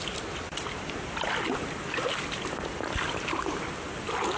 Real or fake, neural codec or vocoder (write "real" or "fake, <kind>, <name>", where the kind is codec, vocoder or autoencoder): real